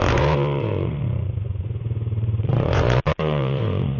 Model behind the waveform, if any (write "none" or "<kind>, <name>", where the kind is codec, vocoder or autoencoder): vocoder, Vocos